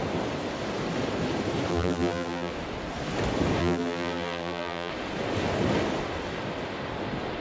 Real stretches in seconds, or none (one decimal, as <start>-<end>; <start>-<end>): 0.0-1.7; 2.5-3.6; 4.9-7.4

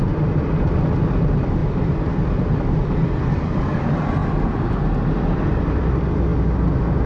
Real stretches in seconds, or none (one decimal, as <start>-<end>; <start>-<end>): 0.0-1.6; 3.8-4.2; 4.8-7.1

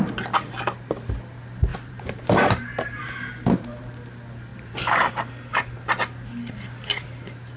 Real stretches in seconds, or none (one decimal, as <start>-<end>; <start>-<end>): 0.0-1.7; 3.0-4.5; 5.1-7.6

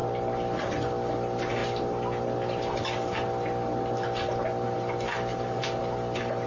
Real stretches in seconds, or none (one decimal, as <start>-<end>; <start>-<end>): 0.0-5.3; 5.8-6.5

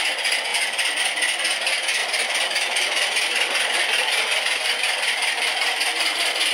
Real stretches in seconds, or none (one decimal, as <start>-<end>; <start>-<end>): none

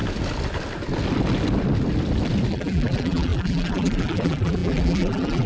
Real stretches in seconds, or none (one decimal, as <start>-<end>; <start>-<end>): 0.0-2.5

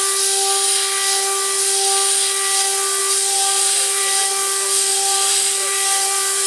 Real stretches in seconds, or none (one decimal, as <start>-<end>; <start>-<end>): 0.0-3.0; 4.0-4.9